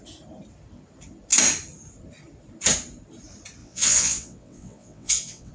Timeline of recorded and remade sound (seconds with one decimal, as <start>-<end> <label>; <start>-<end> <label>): 0.0-3.6 recorded; 3.6-5.5 remade